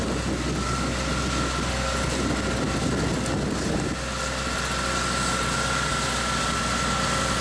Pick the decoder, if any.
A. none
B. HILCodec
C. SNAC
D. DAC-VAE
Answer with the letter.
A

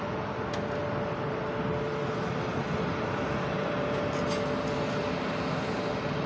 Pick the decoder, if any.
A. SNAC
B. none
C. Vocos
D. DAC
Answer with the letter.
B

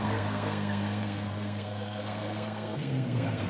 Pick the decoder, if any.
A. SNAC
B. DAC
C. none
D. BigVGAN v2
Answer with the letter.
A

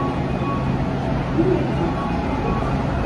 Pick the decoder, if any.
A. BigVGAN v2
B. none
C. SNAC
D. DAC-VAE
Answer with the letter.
B